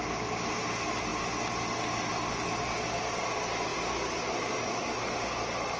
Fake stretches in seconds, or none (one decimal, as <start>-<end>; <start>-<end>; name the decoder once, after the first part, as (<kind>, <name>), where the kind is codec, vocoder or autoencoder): none